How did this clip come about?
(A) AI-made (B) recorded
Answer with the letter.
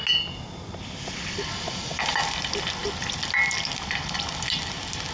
B